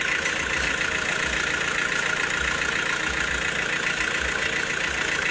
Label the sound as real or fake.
real